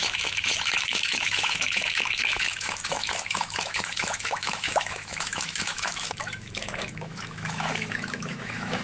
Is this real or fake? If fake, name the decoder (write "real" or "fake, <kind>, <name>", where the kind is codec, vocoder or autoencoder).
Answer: fake, autoencoder, DAC-VAE